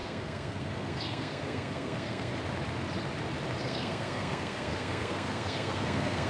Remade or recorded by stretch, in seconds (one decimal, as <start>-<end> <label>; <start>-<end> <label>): 0.0-2.3 remade; 2.3-3.6 recorded; 3.6-6.3 remade